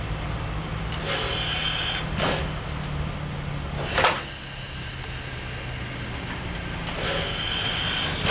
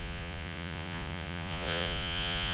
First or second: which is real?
first